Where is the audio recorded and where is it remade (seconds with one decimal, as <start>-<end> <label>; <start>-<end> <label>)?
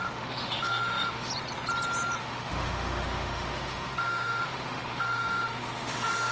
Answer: 0.0-1.3 remade; 1.3-2.2 recorded; 2.2-6.3 remade